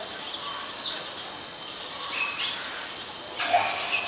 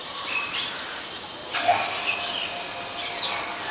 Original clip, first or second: first